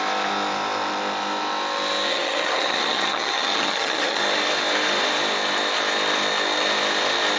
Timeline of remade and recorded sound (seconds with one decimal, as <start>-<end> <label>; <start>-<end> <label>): 0.0-2.1 recorded; 2.1-4.2 remade; 4.2-7.4 recorded

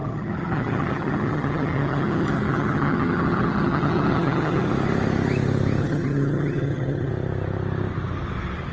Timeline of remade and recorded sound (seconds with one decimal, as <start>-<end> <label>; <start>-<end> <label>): 0.0-4.7 remade; 4.7-5.8 recorded; 5.8-7.1 remade; 7.1-8.7 recorded

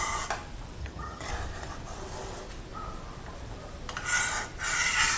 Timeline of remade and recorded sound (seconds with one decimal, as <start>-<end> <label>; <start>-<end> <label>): 0.0-0.8 recorded; 0.8-1.3 remade; 1.3-5.2 recorded

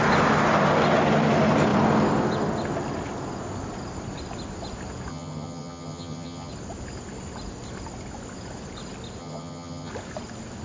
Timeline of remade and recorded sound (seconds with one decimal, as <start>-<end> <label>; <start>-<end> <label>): 0.0-5.1 recorded; 5.1-6.5 remade; 6.5-9.2 recorded; 9.2-9.9 remade; 9.9-10.6 recorded